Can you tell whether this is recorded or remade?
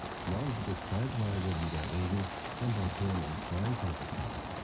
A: recorded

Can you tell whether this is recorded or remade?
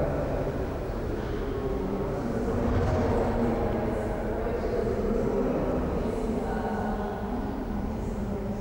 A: recorded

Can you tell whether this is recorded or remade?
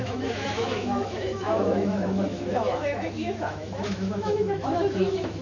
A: remade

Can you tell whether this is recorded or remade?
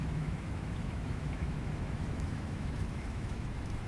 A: remade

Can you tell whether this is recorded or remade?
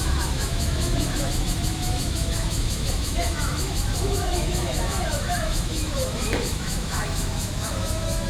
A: remade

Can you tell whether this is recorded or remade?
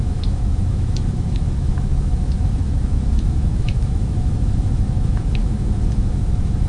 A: remade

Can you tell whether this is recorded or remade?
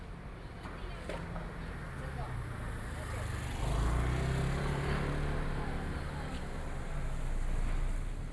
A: recorded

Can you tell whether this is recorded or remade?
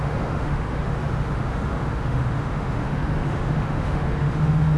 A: remade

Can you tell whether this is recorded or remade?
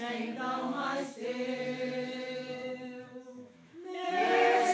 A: remade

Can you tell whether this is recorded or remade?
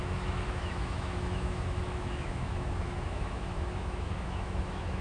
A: remade